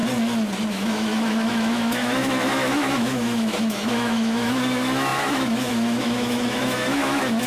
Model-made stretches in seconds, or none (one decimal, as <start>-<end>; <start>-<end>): 0.7-7.5